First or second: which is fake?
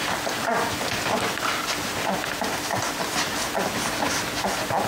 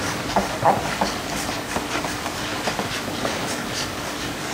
second